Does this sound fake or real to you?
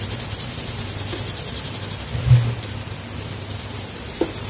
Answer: real